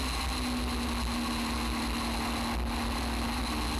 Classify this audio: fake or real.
real